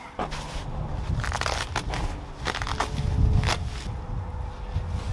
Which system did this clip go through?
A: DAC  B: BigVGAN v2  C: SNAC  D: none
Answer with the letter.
D